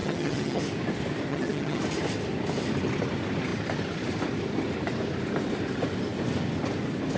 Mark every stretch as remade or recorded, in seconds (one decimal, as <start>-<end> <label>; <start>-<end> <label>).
0.0-0.6 remade; 0.6-1.3 recorded; 1.3-1.8 remade; 1.8-7.2 recorded